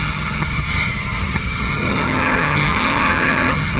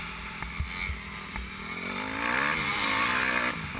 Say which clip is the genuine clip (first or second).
second